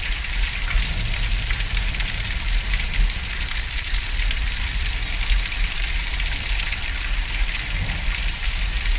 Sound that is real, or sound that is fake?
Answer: fake